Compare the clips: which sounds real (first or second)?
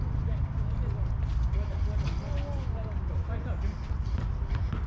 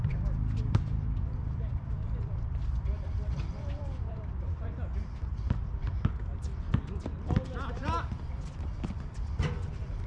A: first